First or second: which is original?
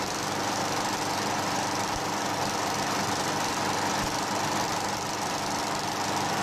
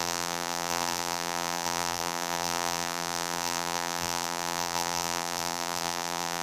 first